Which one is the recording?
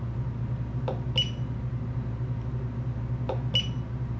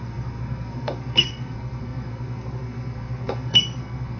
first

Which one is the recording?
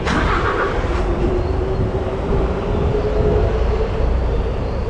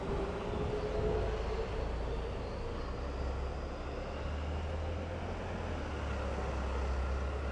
second